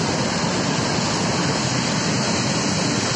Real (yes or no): yes